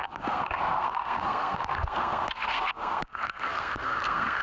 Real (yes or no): no